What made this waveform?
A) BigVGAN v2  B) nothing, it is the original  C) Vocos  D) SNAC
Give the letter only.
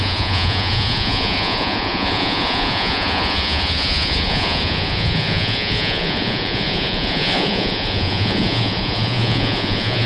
C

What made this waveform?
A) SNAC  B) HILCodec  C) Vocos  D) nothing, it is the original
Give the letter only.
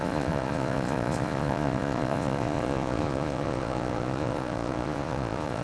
C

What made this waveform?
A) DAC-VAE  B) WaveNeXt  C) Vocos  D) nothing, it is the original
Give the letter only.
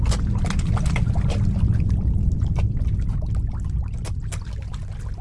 D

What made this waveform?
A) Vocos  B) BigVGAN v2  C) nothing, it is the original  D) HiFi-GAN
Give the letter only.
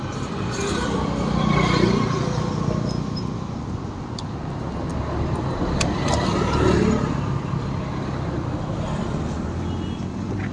C